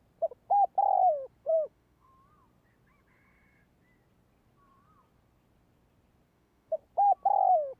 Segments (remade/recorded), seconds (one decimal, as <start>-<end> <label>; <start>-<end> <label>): 0.0-1.4 recorded; 1.4-2.1 remade; 2.1-6.3 recorded; 6.3-6.8 remade; 6.8-7.8 recorded